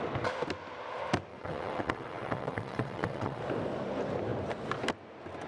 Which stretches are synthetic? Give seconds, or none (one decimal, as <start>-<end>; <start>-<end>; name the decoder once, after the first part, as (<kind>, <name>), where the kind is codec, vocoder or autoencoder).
1.3-3.4 (vocoder, WaveNeXt)